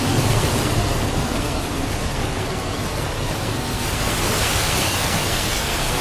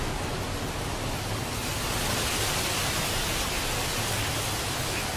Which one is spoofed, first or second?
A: first